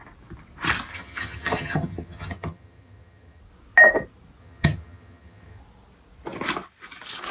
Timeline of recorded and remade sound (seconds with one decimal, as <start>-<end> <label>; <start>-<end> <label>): 0.0-0.9 recorded; 0.9-3.4 remade; 3.4-4.4 recorded; 4.4-5.6 remade; 5.6-7.3 recorded